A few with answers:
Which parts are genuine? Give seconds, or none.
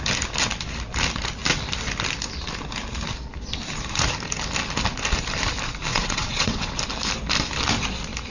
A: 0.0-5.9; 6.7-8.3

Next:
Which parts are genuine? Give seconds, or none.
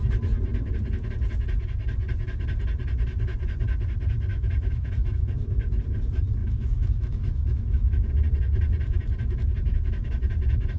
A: 0.0-4.3; 5.5-6.4; 8.1-9.7; 10.2-10.8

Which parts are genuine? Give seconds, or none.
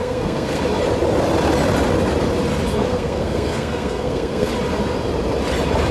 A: 0.6-2.8; 4.5-5.9